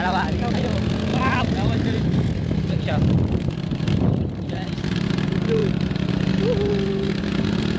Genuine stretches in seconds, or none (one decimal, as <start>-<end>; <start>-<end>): 0.0-7.8